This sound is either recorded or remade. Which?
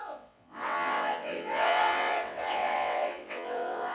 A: remade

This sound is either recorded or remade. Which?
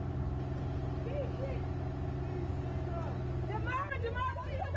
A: recorded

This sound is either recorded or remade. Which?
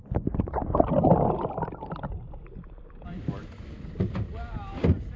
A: recorded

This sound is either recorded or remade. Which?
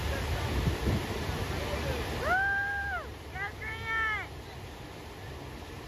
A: recorded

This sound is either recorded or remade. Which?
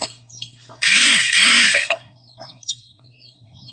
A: remade